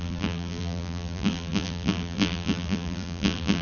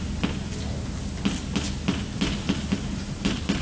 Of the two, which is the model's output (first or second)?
first